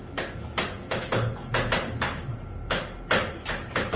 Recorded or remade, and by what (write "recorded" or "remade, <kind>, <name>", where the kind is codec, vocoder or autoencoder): recorded